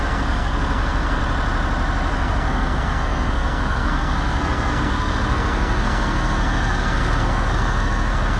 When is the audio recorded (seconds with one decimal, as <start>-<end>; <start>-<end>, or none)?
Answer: 1.2-2.1